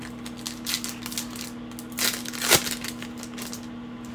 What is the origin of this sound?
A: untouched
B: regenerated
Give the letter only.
A